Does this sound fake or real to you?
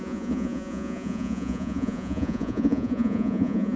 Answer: fake